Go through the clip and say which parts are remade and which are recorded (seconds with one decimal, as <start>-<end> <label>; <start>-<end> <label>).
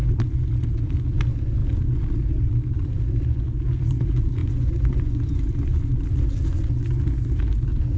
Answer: 0.0-4.4 recorded; 4.4-5.4 remade; 5.4-8.0 recorded